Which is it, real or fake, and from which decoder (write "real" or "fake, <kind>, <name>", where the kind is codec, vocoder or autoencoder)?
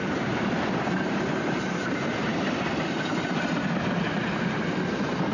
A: fake, vocoder, BigVGAN v2